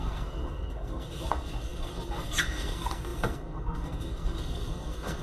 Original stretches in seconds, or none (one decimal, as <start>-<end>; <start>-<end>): none